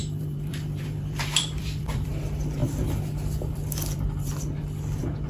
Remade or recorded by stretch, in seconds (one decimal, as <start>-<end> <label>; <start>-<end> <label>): 0.0-2.1 remade; 2.1-2.6 recorded; 2.6-4.3 remade; 4.3-5.3 recorded